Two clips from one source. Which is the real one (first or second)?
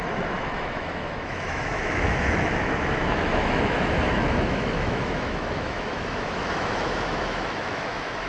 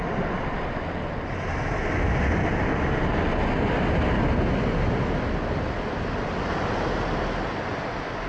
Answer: second